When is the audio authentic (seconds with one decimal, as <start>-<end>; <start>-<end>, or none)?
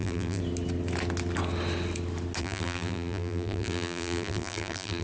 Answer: 0.4-2.4